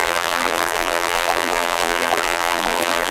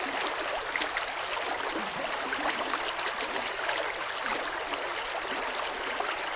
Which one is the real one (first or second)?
second